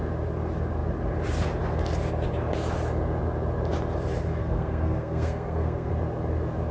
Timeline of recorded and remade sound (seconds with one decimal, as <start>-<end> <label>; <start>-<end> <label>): 0.0-4.4 recorded; 4.4-5.9 remade; 5.9-6.7 recorded